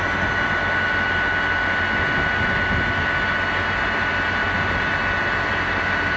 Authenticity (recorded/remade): recorded